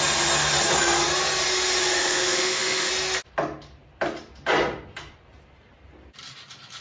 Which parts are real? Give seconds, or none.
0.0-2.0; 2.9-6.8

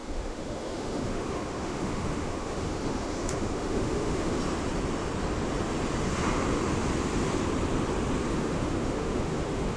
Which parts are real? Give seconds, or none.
4.4-8.3

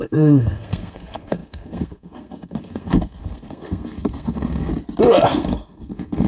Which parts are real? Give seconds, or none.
4.7-5.3

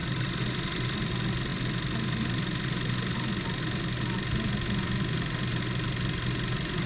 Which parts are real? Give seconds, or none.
1.1-6.9

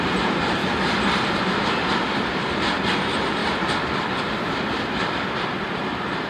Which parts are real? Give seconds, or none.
0.6-1.3; 2.0-2.5; 3.4-4.2